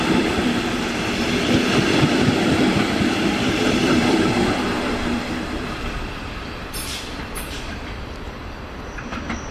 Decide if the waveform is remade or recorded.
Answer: remade